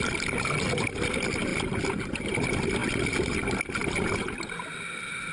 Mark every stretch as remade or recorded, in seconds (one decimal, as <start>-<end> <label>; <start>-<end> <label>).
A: 0.0-5.3 recorded